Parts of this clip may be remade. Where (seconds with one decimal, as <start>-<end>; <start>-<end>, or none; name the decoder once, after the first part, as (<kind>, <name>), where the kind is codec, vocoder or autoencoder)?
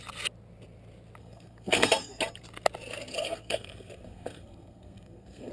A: 1.2-2.2 (codec, SNAC); 3.1-5.5